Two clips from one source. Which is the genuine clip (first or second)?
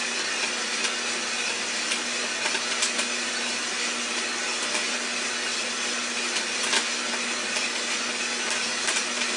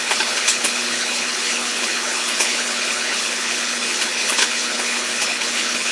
first